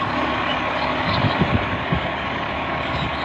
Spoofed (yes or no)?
yes